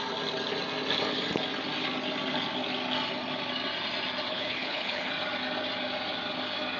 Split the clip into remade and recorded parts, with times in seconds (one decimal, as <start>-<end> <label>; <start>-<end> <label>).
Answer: 0.0-4.3 recorded; 4.3-5.1 remade; 5.1-6.8 recorded